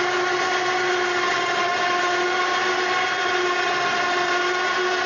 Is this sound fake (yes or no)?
no